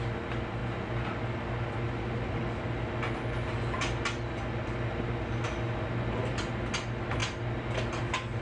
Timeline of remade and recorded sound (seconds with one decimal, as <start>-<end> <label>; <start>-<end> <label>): 0.0-8.4 recorded

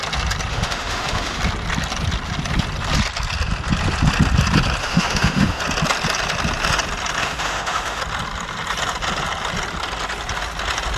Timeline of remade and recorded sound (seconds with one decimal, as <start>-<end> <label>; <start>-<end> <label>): 0.0-0.5 recorded; 0.5-1.4 remade; 1.4-4.8 recorded; 4.8-5.6 remade; 5.6-7.2 recorded; 7.2-8.0 remade; 8.0-11.0 recorded